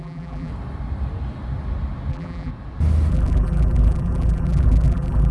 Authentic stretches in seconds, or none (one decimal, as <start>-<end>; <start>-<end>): 0.5-2.1; 2.5-3.1